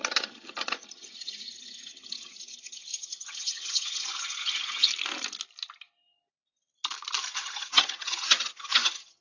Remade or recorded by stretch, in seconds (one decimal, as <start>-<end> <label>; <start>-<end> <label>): 0.0-4.9 remade; 4.9-7.2 recorded; 7.2-9.2 remade